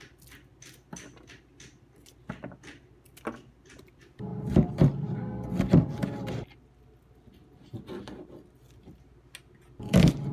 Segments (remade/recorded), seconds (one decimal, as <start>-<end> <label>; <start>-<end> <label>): 0.0-10.3 recorded